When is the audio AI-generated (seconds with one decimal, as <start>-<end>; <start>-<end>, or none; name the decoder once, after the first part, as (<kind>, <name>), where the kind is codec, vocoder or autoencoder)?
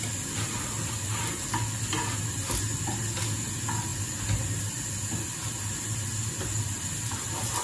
none